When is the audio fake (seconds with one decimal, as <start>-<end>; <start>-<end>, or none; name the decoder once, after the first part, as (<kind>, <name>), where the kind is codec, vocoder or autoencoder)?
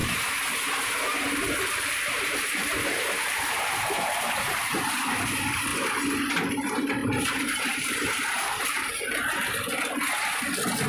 0.0-4.7 (vocoder, BigVGAN v2); 7.0-8.9